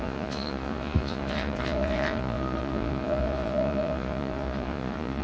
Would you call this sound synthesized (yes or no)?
yes